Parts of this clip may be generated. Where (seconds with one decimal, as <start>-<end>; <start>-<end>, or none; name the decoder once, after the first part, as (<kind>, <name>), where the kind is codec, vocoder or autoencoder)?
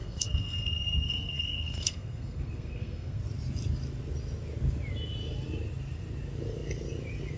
0.0-3.2 (codec, SNAC)